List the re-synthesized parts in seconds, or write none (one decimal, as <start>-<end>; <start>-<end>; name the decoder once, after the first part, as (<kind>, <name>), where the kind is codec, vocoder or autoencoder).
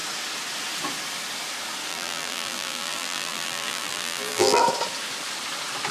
1.9-4.6 (vocoder, BigVGAN v2)